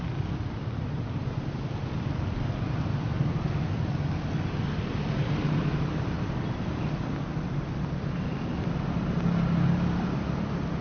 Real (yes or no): yes